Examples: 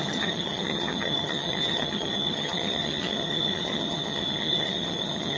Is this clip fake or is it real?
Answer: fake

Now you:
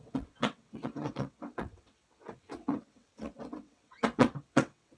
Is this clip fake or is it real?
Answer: fake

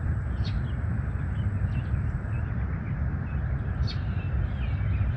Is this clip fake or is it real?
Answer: real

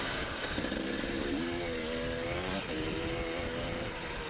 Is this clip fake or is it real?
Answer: fake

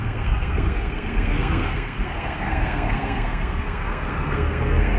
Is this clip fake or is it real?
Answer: fake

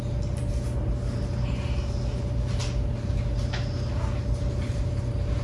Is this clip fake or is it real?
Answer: real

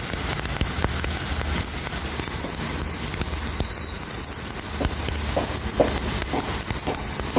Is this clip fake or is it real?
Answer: real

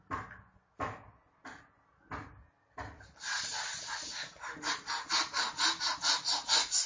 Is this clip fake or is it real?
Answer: real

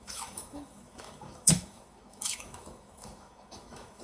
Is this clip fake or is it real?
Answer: fake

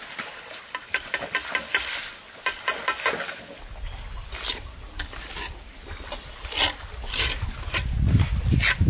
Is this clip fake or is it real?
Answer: real